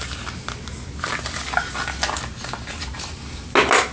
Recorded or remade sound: recorded